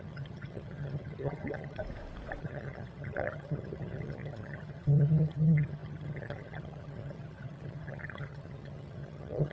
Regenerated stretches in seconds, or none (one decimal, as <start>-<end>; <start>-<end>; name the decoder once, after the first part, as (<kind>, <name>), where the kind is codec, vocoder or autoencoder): 0.0-1.8 (vocoder, HiFi-GAN); 2.4-9.5

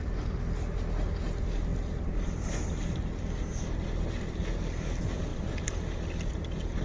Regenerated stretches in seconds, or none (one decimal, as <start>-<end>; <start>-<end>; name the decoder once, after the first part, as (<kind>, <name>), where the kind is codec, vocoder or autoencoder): none

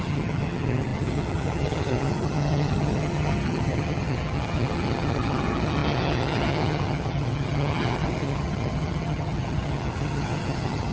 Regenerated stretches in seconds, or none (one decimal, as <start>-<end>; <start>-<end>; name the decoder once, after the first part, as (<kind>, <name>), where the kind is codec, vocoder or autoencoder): 0.0-10.9 (vocoder, HiFi-GAN)